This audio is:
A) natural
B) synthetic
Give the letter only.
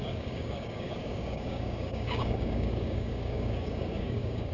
B